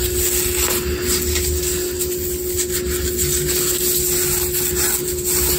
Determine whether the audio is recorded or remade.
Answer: recorded